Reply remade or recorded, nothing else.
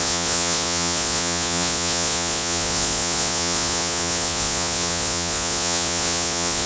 remade